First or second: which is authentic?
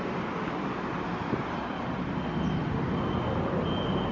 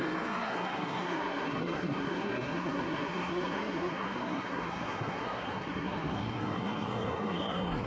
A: first